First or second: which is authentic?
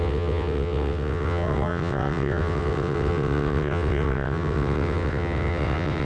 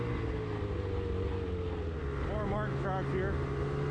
second